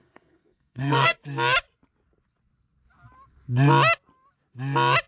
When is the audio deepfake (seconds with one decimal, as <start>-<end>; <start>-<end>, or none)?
0.0-1.2